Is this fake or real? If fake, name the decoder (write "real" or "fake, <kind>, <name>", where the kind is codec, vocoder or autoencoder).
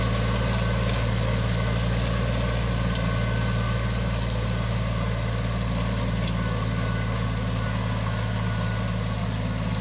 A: real